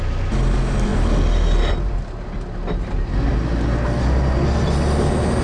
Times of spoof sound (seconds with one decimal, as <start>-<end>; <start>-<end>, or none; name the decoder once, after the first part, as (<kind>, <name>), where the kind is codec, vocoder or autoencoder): none